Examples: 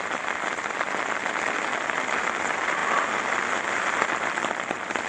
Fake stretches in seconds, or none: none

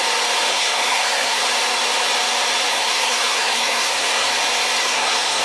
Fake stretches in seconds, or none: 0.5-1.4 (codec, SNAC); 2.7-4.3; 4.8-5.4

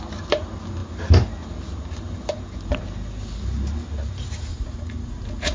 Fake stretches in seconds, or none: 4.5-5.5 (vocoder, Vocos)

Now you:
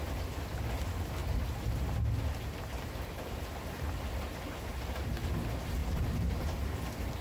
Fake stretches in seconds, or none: none

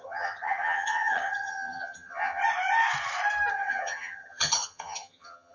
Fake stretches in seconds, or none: 0.0-2.4 (vocoder, HiFi-GAN); 3.5-5.5

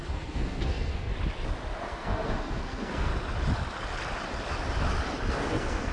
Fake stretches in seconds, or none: 0.0-1.1 (codec, SNAC); 1.8-3.1; 5.3-5.9